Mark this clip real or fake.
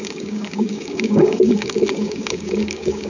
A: fake